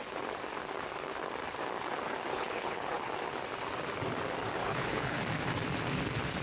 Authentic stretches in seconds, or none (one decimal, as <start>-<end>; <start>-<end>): 0.0-2.3; 3.1-4.6; 5.2-6.4

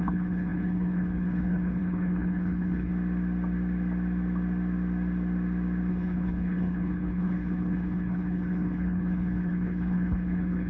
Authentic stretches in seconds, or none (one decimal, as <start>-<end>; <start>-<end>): 2.9-5.9

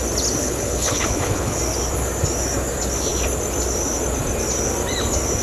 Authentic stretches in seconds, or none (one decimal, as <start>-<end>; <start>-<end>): 0.0-0.4; 1.6-5.4

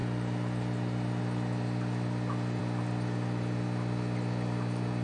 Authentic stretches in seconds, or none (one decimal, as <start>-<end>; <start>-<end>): 0.0-5.0